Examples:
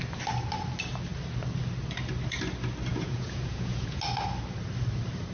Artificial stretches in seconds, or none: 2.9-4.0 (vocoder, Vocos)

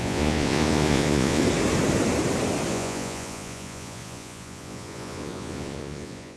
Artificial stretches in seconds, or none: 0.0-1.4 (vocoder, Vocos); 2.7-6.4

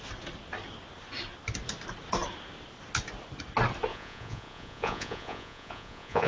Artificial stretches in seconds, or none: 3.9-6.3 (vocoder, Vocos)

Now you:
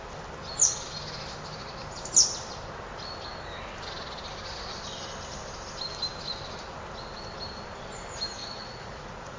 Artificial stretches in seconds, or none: 8.4-9.4 (vocoder, Vocos)